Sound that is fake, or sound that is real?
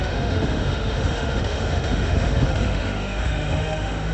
fake